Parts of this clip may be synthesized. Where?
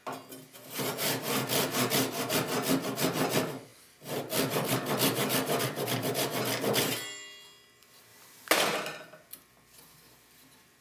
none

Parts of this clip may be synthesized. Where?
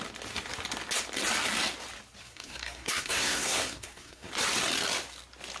2.2-4.3 (codec, SNAC)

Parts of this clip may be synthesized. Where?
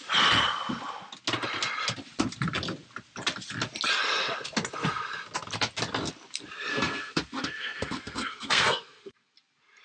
6.7-9.3 (codec, SNAC)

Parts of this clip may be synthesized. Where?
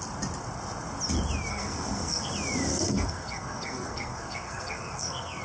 1.5-2.3 (codec, SNAC); 2.7-5.4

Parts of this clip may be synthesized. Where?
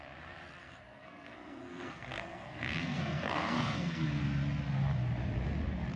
0.6-4.2 (codec, SNAC)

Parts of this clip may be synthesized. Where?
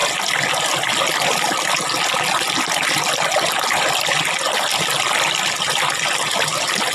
none